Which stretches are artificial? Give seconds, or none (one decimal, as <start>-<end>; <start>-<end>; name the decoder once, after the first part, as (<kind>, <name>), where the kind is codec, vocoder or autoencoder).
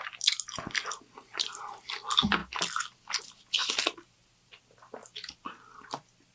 none